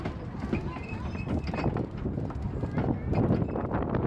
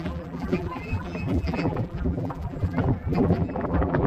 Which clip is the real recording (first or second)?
first